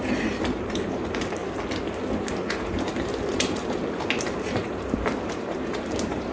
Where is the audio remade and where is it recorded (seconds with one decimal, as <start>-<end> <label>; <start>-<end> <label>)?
0.0-1.4 remade; 1.4-2.5 recorded; 2.5-6.3 remade